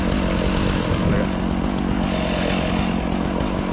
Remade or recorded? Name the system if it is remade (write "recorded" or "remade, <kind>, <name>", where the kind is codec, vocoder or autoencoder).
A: recorded